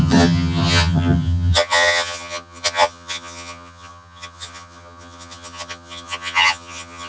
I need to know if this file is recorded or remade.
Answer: remade